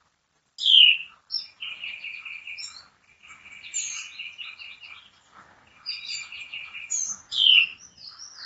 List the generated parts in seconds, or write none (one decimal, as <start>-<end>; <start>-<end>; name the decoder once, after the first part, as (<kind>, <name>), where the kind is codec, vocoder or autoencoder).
6.2-6.8 (vocoder, Vocos)